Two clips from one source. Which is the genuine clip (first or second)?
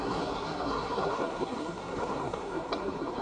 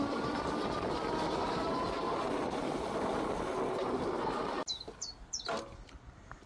second